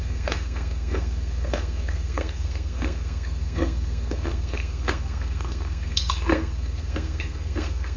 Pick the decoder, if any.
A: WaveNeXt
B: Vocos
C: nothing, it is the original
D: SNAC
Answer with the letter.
D